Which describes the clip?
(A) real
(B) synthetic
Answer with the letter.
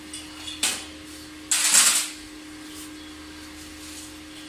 A